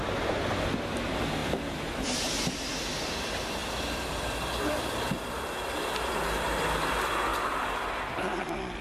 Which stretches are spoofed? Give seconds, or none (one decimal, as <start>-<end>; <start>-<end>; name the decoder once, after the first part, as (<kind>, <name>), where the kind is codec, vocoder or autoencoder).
1.4-2.7 (vocoder, BigVGAN v2); 3.6-4.8

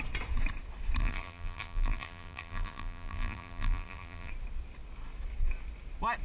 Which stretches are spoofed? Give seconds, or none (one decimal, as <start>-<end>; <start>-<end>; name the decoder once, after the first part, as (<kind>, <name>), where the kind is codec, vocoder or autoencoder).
1.0-4.3 (vocoder, BigVGAN v2)

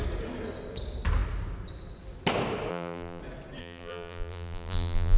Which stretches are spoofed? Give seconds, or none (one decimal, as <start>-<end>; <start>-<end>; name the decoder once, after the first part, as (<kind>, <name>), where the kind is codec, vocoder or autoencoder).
2.7-3.2 (vocoder, BigVGAN v2); 3.6-5.2

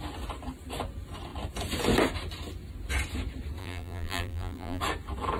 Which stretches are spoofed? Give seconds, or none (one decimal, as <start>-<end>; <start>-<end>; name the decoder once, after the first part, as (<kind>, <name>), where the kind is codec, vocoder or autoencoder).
3.6-4.8 (vocoder, BigVGAN v2)